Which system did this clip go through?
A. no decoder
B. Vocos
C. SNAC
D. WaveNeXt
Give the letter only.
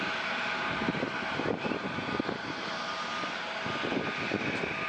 A